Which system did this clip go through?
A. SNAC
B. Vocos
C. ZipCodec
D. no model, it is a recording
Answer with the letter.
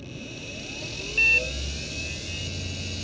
D